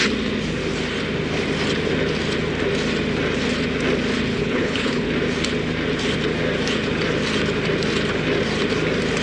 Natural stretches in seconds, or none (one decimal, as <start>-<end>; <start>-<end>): 0.0-4.3; 5.1-9.2

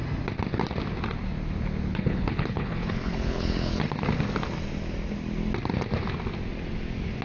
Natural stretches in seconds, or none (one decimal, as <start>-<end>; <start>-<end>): 0.0-1.9; 3.8-7.2